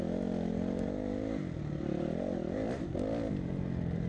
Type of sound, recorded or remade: recorded